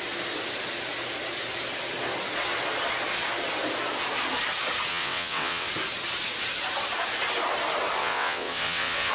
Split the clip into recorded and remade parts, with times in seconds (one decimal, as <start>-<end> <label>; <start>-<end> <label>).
0.0-4.9 recorded; 4.9-5.7 remade; 5.7-8.0 recorded; 8.0-9.1 remade